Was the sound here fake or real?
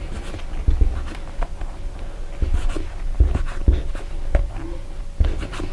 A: real